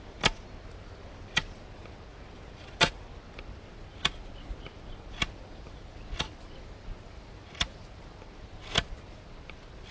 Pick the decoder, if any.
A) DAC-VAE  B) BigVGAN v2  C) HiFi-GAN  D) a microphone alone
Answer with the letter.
D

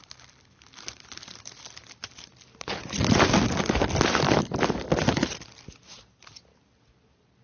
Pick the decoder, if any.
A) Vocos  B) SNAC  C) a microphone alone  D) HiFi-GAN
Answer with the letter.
C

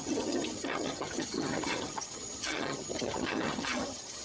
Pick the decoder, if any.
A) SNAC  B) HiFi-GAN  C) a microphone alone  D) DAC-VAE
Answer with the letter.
B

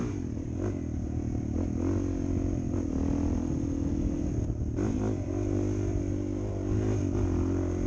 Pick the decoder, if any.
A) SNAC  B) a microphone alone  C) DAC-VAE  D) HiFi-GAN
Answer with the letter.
B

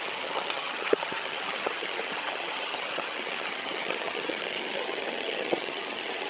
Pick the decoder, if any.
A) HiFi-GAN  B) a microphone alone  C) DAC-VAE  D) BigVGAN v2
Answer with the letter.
A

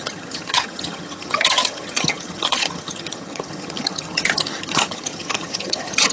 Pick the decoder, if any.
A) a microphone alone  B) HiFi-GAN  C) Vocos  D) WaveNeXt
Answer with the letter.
B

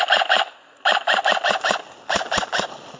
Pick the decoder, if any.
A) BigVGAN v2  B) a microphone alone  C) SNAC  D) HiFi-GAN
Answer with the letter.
B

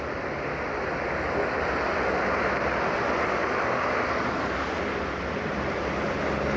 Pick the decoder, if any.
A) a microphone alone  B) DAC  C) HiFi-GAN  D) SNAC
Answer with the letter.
A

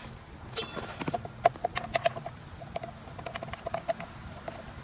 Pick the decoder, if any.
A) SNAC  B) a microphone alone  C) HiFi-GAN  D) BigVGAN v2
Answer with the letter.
B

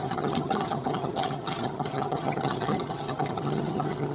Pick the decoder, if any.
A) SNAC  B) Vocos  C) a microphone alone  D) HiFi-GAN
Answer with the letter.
D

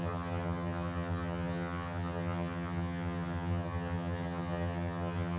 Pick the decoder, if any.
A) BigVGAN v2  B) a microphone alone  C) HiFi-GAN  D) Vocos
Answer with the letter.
C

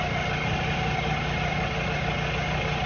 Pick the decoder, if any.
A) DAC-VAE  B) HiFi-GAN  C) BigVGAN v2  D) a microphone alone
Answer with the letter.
D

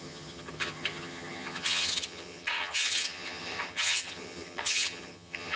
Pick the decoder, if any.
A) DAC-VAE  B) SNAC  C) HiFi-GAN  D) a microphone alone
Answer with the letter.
C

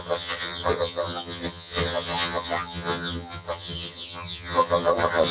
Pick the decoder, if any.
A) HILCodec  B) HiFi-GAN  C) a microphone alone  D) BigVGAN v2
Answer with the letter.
B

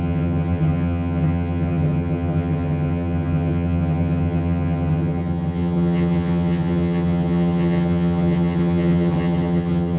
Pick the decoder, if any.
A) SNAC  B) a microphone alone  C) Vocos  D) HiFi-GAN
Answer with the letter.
D